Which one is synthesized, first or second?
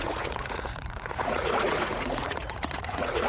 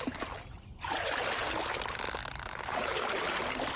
first